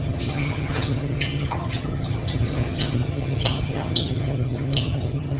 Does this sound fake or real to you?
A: fake